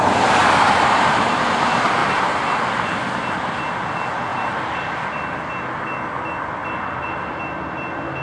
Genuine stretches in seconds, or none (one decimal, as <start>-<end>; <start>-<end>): 0.0-0.4; 1.3-6.6; 7.3-8.2